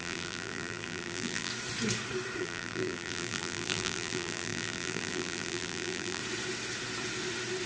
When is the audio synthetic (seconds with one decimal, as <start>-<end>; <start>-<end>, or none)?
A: 0.0-1.5; 2.4-6.2